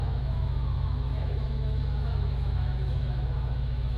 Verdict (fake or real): fake